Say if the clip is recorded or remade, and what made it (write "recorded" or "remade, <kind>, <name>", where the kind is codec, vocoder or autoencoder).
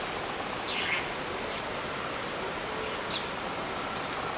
recorded